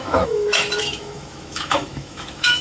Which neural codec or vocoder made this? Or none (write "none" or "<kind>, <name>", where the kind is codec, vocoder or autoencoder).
autoencoder, DAC-VAE